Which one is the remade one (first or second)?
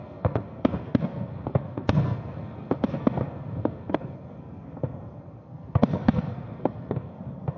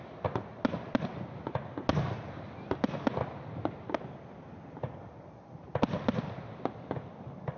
first